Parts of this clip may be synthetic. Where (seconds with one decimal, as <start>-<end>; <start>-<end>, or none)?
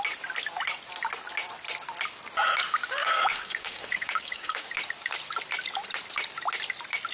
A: 3.0-4.7